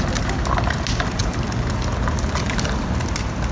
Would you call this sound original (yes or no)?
yes